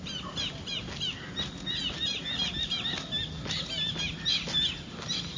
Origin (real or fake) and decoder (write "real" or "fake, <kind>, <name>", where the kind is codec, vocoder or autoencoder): real